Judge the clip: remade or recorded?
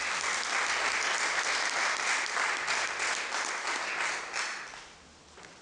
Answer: recorded